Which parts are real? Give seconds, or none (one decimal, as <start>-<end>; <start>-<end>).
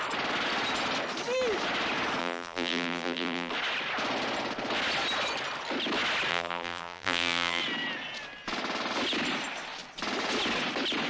0.0-2.2; 3.5-6.3; 7.6-11.1